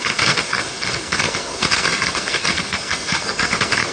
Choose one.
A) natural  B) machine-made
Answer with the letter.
B